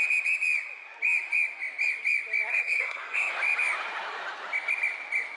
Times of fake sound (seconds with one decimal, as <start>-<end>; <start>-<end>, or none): 2.5-3.3